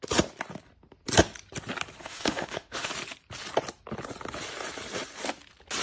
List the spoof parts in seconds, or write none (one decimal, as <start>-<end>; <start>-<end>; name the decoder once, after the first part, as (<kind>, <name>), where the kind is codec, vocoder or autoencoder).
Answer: 2.0-2.9 (autoencoder, DAC-VAE)